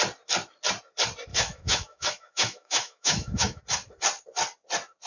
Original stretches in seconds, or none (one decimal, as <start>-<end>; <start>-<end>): 0.0-1.3; 3.6-5.1